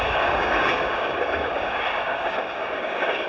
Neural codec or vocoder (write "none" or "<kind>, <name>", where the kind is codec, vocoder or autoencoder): codec, DAC